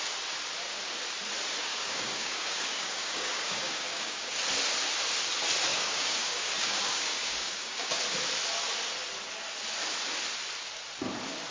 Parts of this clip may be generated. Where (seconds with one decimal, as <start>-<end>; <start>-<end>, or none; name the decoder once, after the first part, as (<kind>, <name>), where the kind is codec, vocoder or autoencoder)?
1.7-4.4 (codec, DAC); 5.7-8.0